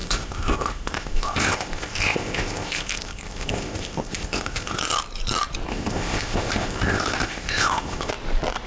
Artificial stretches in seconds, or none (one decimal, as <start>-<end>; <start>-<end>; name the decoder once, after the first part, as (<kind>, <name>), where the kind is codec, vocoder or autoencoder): 0.0-4.8 (codec, ZipCodec); 5.7-8.1